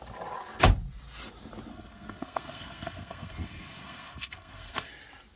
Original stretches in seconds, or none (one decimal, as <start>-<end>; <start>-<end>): 0.0-1.7; 4.9-5.4